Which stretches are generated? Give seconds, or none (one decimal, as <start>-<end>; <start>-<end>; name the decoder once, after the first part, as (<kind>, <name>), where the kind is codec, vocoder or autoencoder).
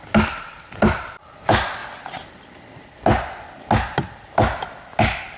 none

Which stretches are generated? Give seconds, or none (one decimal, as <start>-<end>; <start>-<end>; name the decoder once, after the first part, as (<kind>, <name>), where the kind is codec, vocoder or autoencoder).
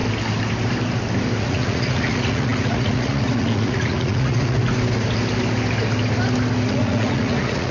1.4-4.6 (vocoder, Vocos); 6.7-7.7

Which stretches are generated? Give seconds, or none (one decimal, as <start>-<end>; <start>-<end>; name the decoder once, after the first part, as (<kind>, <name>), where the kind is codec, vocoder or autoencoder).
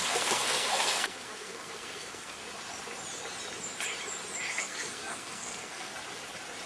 0.0-2.4 (codec, SNAC); 4.5-5.9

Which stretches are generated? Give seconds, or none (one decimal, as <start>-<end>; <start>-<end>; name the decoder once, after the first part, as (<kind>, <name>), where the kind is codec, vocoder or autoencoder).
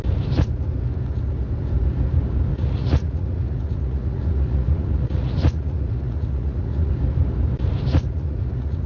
2.5-6.9 (vocoder, Vocos); 7.9-8.9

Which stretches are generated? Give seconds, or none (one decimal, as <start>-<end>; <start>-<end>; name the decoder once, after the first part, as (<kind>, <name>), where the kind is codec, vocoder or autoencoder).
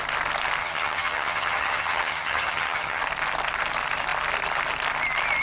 0.6-3.0 (vocoder, HiFi-GAN)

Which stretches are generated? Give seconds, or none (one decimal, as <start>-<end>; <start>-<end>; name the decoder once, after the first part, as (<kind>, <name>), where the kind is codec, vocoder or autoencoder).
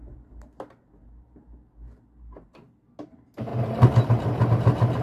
none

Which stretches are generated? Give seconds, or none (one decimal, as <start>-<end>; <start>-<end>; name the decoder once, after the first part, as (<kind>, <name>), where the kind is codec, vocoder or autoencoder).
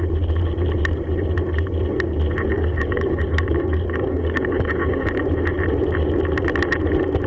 2.5-5.1 (codec, DAC)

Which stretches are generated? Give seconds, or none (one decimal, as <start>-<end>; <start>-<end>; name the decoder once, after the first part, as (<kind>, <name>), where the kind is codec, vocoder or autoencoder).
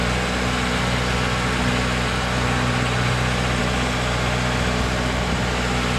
none